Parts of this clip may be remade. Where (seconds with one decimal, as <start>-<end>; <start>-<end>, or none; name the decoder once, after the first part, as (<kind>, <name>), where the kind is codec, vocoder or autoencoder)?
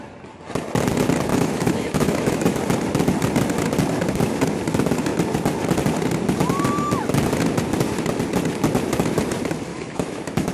1.3-2.6 (autoencoder, DAC-VAE); 9.7-10.5